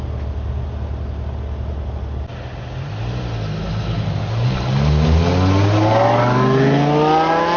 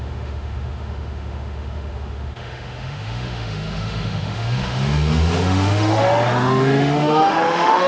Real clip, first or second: first